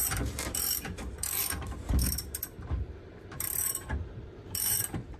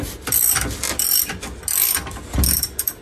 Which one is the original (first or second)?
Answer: second